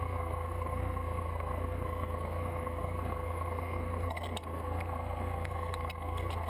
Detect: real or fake fake